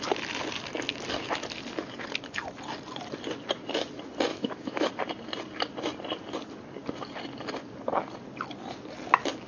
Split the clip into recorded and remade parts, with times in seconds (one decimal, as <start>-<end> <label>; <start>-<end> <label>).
0.0-4.3 recorded; 4.3-4.9 remade; 4.9-9.5 recorded